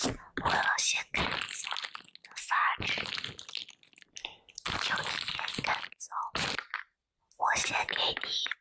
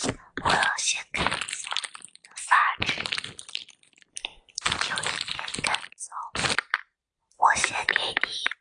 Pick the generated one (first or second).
second